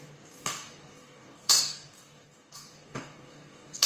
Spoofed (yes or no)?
yes